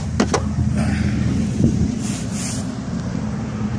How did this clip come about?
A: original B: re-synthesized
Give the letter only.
A